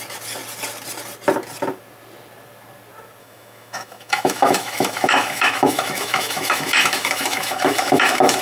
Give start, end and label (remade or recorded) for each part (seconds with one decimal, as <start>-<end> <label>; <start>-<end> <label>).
0.0-3.2 recorded; 3.2-8.4 remade